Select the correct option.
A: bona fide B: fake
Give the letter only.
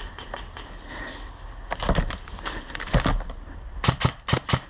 A